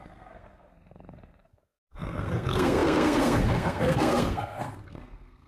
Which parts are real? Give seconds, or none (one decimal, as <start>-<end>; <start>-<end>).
none